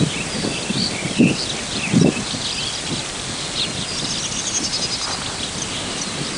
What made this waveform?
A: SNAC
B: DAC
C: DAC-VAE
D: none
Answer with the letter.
D